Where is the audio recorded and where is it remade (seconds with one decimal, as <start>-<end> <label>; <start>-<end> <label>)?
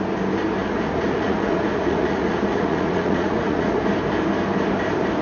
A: 0.0-0.6 recorded; 0.6-3.7 remade; 3.7-5.2 recorded